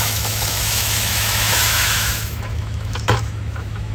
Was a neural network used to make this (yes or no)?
yes